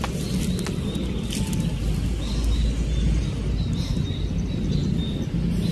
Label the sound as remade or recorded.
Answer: recorded